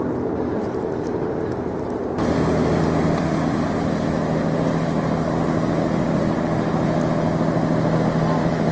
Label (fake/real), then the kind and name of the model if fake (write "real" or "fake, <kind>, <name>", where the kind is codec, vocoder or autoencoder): real